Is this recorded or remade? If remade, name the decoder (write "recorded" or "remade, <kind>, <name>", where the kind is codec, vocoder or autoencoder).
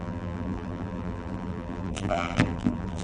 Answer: remade, vocoder, BigVGAN v2